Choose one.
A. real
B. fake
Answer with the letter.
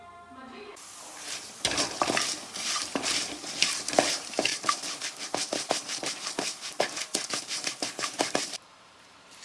B